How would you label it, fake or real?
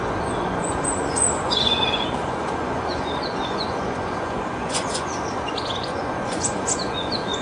fake